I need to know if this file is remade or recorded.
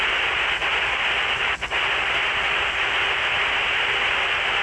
recorded